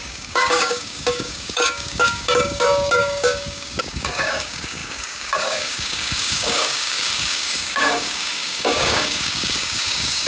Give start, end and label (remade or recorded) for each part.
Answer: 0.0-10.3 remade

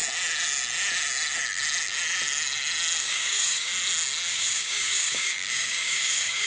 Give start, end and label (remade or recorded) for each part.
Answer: 0.0-3.0 recorded; 3.0-3.7 remade; 3.7-4.3 recorded; 4.3-6.5 remade

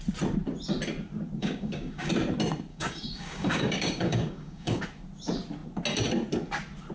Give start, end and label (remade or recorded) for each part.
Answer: 0.0-1.4 recorded; 1.4-2.1 remade; 2.1-2.7 recorded; 2.7-4.8 remade; 4.8-6.9 recorded